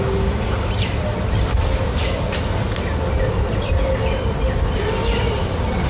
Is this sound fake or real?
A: real